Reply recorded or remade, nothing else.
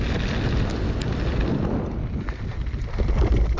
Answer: recorded